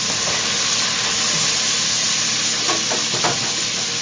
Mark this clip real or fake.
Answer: real